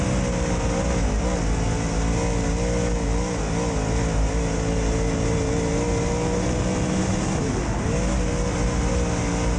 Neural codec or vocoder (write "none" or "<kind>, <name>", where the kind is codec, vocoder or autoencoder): none